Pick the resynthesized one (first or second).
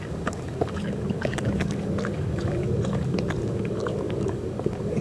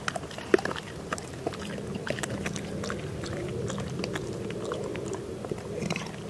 first